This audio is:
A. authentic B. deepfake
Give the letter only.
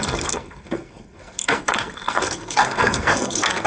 B